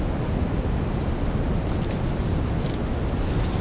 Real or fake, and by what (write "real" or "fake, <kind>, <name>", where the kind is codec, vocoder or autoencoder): real